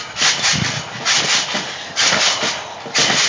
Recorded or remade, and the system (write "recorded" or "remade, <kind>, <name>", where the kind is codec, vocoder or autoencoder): recorded